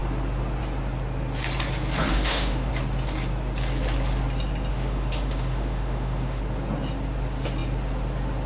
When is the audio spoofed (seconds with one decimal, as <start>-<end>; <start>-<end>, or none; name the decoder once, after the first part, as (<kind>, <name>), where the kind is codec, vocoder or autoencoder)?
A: 2.1-2.7 (autoencoder, DAC-VAE); 4.7-6.4